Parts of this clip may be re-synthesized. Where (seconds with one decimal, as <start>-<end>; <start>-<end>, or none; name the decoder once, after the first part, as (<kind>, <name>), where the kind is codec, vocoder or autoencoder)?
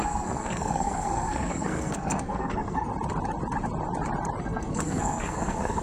0.0-2.9 (codec, SNAC); 4.4-5.8